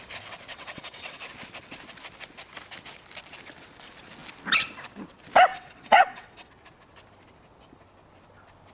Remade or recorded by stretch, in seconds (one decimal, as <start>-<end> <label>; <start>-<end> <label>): 0.0-0.5 recorded; 0.5-1.2 remade; 1.2-5.5 recorded; 5.5-6.5 remade; 6.5-8.7 recorded